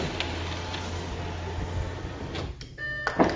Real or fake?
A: real